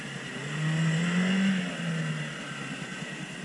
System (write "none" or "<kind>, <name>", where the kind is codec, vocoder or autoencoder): none